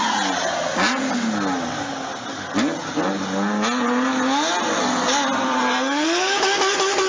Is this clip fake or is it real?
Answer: real